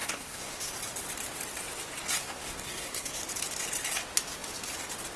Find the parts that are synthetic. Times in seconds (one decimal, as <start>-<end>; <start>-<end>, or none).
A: 0.0-0.7; 2.2-3.2